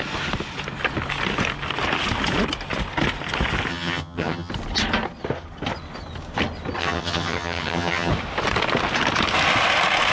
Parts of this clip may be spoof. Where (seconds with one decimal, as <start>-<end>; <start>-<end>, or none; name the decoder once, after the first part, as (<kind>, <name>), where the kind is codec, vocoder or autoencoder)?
3.7-4.5 (vocoder, HiFi-GAN); 6.8-8.1